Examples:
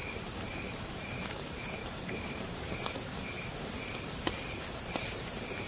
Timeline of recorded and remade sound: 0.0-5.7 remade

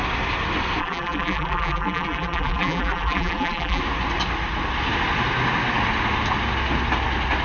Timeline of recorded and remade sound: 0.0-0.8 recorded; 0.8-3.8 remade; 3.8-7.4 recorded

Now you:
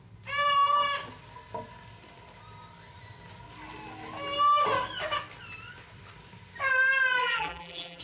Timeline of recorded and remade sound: 0.0-7.2 recorded; 7.2-8.0 remade

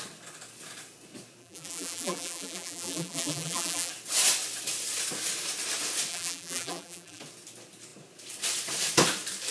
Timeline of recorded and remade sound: 0.0-1.4 recorded; 1.4-3.9 remade; 3.9-6.1 recorded; 6.1-7.2 remade; 7.2-9.5 recorded